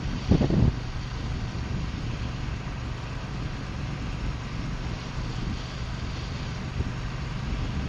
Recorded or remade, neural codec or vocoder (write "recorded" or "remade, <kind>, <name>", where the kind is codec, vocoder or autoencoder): recorded